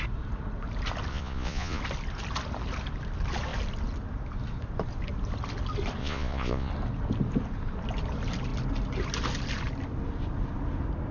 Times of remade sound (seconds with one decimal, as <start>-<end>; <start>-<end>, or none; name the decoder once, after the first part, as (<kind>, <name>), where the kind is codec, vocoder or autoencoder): 1.1-1.8 (vocoder, Vocos); 6.0-6.7